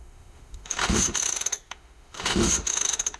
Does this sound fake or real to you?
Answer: fake